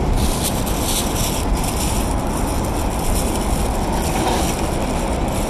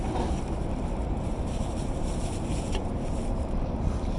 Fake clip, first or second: second